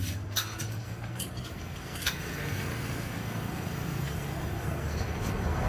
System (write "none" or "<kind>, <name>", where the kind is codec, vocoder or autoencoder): codec, SNAC